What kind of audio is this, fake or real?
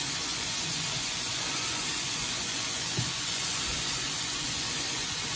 fake